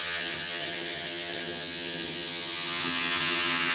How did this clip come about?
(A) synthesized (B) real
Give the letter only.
A